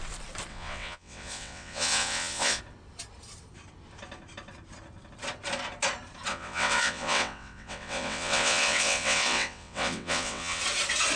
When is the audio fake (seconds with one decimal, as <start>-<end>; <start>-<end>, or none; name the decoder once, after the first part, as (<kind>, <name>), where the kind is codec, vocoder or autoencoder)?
0.5-2.6 (vocoder, WaveNeXt); 6.3-10.6